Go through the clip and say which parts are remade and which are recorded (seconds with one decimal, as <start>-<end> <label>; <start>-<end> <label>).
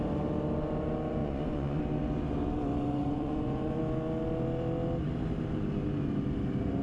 0.0-1.2 recorded; 1.2-1.8 remade; 1.8-3.0 recorded; 3.0-3.8 remade; 3.8-6.8 recorded